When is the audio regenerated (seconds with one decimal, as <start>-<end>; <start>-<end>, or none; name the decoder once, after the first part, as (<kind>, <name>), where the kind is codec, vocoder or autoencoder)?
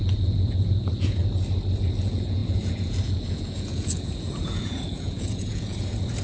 0.0-1.2 (vocoder, Vocos); 1.8-6.2